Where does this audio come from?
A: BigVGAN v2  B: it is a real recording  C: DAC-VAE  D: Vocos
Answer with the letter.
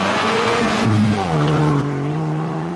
D